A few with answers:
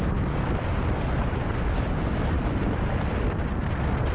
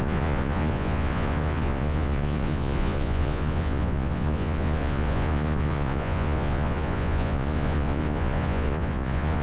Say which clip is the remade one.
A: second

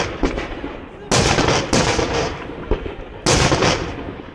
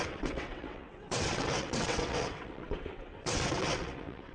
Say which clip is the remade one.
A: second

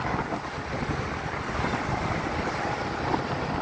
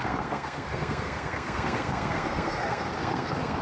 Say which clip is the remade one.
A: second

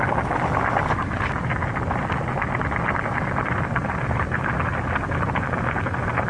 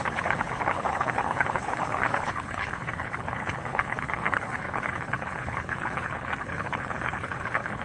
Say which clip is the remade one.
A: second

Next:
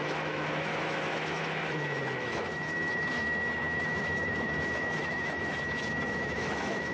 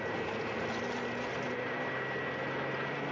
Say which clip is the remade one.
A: first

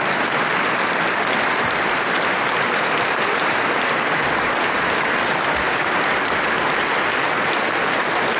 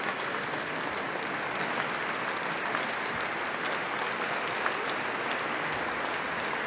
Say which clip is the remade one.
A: first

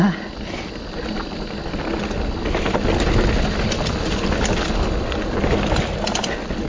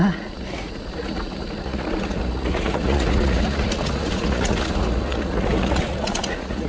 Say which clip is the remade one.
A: second